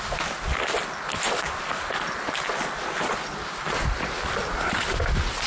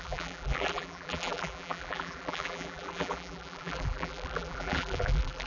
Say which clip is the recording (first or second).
first